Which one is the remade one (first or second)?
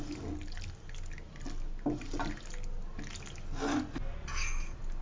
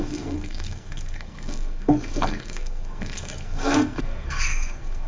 second